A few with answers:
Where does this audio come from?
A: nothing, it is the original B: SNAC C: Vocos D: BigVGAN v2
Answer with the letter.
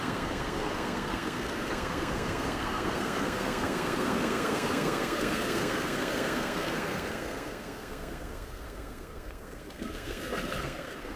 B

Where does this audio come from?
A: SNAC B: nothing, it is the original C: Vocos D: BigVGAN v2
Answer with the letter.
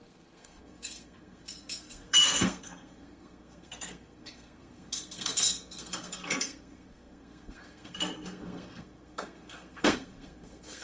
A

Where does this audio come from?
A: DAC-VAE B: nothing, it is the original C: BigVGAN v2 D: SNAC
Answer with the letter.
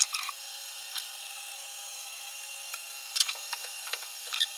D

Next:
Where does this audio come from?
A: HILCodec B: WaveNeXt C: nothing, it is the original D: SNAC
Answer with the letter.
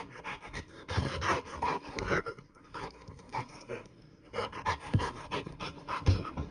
D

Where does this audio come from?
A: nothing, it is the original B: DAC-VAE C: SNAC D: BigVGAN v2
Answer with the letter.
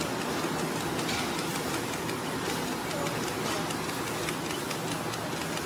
A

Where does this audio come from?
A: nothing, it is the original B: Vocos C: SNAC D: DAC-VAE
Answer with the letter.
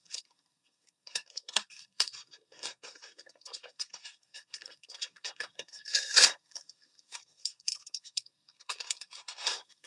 C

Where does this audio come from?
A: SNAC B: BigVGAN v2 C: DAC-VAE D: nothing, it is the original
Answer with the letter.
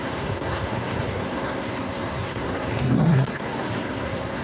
A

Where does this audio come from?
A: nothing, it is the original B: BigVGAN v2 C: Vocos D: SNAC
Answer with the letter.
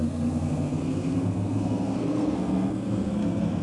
D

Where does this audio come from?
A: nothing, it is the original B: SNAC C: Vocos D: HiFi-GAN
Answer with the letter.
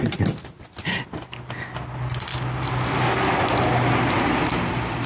A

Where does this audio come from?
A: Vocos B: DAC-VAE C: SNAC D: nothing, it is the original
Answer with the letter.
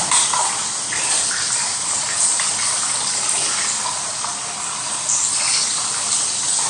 D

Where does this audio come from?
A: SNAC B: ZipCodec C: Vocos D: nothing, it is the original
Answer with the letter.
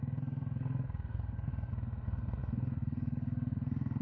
A